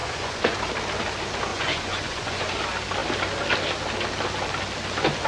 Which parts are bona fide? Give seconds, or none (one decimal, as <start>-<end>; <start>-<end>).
0.6-1.5; 2.5-5.3